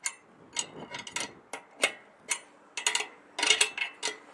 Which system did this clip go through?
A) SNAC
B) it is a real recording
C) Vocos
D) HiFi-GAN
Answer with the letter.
B